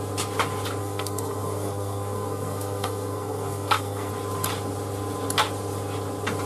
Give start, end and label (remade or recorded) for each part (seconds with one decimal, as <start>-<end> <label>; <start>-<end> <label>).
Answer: 0.0-0.8 recorded; 0.8-4.1 remade; 4.1-6.5 recorded